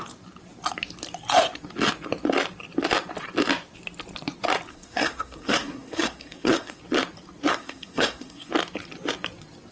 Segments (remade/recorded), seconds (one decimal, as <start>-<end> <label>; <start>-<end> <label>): 0.0-4.7 recorded; 4.7-6.8 remade; 6.8-7.5 recorded; 7.5-8.5 remade; 8.5-9.7 recorded